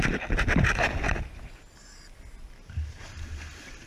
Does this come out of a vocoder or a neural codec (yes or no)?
no